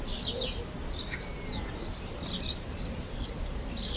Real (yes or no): yes